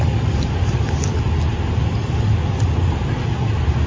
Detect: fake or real real